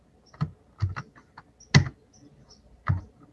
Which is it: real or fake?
real